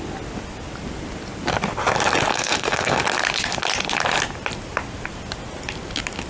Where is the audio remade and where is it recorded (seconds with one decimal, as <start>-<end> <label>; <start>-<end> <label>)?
0.0-2.3 recorded; 2.3-3.0 remade; 3.0-6.3 recorded